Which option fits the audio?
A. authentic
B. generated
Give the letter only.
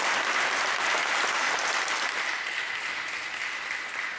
A